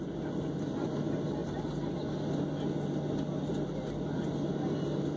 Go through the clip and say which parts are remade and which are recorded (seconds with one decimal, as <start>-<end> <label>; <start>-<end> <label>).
0.0-5.2 recorded